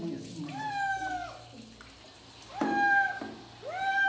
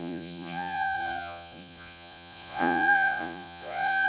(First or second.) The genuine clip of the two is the first